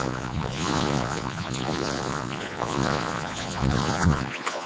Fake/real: fake